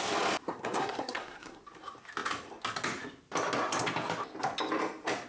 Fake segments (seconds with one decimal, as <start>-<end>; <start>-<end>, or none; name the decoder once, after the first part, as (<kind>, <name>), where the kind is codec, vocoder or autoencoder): 0.4-1.6 (codec, SNAC)